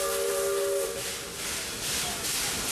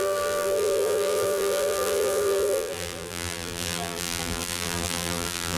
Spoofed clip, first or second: second